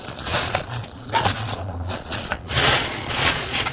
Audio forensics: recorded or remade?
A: remade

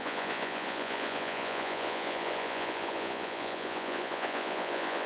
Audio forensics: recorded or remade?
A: remade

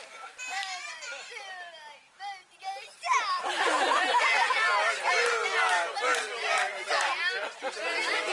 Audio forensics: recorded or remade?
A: recorded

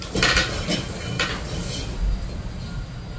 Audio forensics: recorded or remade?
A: recorded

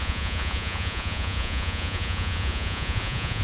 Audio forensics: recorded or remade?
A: remade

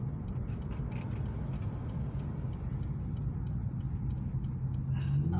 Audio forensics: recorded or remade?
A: recorded